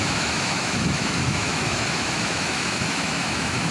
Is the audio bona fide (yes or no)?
no